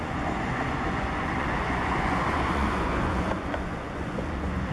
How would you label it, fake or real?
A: fake